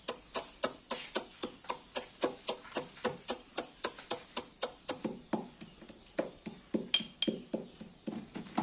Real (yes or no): yes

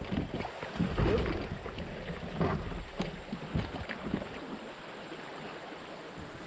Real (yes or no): yes